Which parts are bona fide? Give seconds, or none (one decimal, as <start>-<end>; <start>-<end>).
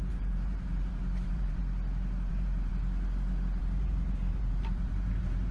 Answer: 1.6-2.3; 2.7-3.6